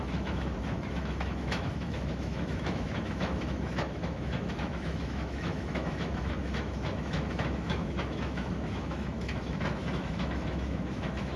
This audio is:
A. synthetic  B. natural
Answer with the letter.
A